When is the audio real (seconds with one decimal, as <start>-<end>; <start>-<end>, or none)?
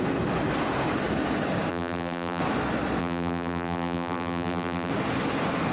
0.0-1.7; 2.4-3.0; 4.9-5.7